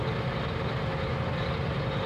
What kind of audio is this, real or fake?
real